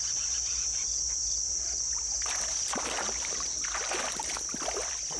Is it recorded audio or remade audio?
recorded